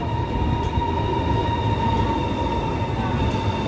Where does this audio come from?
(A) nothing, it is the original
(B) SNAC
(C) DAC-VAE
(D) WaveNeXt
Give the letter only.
A